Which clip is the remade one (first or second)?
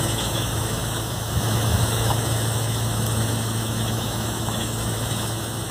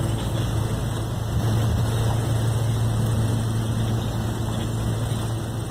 first